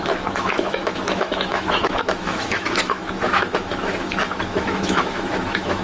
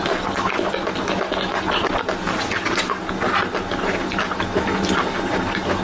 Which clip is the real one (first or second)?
second